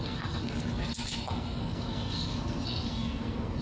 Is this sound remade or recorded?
remade